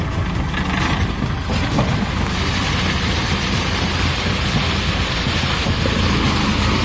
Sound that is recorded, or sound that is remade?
recorded